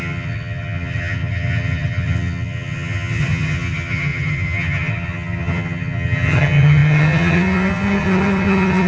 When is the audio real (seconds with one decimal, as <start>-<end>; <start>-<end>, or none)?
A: none